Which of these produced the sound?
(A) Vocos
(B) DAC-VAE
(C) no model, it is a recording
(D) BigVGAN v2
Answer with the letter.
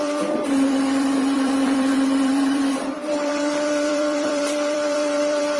D